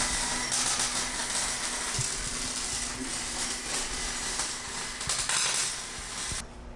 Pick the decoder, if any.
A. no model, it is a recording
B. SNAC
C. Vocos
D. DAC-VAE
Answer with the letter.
A